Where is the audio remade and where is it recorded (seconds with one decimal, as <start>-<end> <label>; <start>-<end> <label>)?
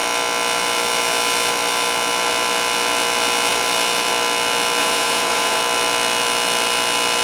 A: 0.0-4.8 recorded; 4.8-5.6 remade; 5.6-7.2 recorded